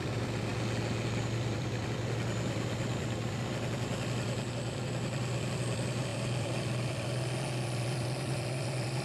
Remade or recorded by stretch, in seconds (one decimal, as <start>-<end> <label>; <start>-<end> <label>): 0.0-0.5 remade; 0.5-1.2 recorded; 1.2-9.0 remade